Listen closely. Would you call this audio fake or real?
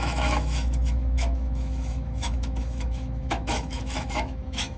fake